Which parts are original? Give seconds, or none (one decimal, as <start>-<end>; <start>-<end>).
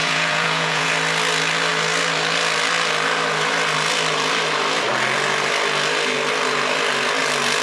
0.9-7.6